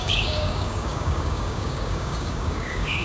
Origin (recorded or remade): remade